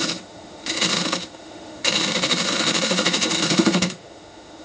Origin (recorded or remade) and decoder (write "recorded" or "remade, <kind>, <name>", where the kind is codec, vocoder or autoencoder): remade, autoencoder, DAC-VAE